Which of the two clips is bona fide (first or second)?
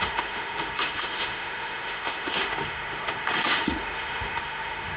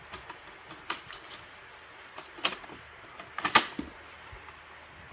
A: second